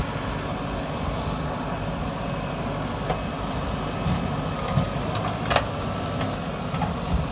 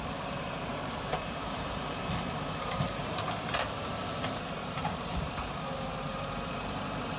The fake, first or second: second